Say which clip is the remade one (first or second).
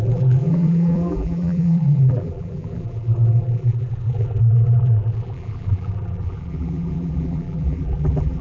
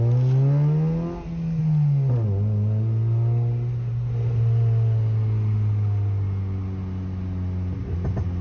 first